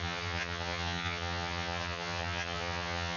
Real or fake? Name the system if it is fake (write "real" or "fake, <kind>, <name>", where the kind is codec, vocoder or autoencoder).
fake, vocoder, HiFi-GAN